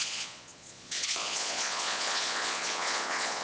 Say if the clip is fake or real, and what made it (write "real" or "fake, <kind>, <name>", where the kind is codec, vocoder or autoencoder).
fake, vocoder, Vocos